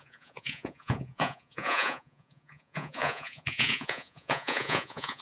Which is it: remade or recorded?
remade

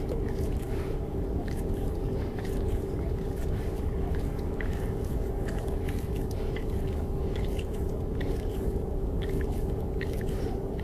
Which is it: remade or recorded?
remade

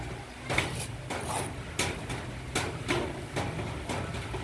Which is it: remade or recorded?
recorded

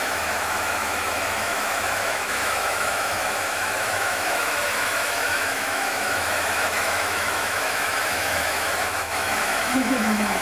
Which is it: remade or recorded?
remade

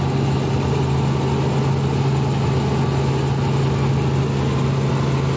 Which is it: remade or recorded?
recorded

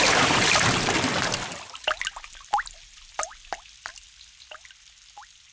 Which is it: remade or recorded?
recorded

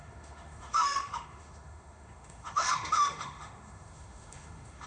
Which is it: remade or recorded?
remade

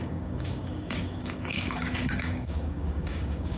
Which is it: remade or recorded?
remade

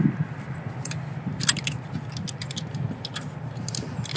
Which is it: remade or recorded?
recorded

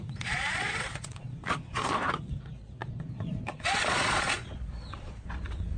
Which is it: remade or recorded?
remade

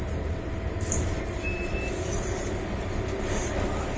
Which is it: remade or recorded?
recorded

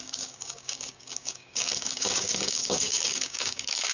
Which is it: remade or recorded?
remade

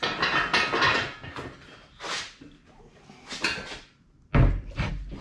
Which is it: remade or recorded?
recorded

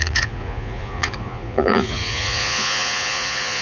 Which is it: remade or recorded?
remade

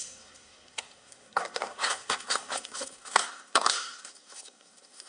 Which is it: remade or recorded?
remade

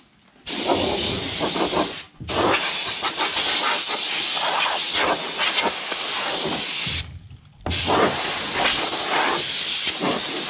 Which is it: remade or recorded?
recorded